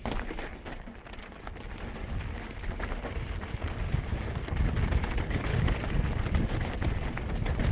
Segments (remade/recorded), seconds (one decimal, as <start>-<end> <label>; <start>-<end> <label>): 0.0-5.5 recorded; 5.5-6.5 remade; 6.5-7.7 recorded